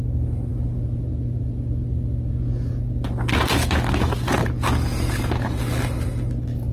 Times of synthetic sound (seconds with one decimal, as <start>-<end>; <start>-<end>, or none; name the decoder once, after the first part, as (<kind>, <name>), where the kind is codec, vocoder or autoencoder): none